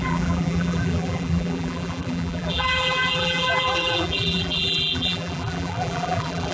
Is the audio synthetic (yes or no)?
yes